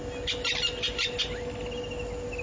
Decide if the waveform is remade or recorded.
recorded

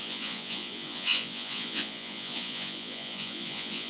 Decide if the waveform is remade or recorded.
remade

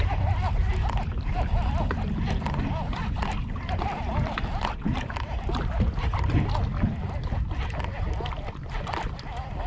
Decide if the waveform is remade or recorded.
recorded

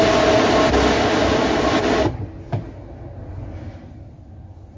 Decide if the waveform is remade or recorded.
recorded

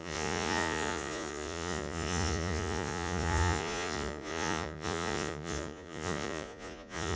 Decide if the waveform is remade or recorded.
remade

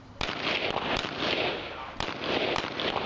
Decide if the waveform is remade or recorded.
recorded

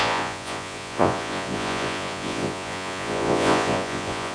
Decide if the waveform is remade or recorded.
remade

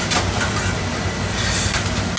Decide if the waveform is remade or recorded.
recorded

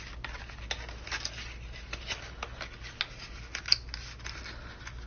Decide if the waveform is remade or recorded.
recorded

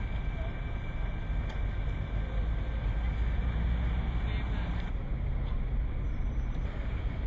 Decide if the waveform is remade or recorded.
recorded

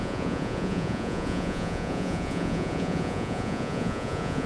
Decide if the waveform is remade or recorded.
remade